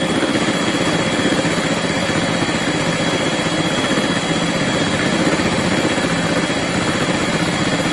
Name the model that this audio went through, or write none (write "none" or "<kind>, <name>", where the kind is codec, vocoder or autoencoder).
none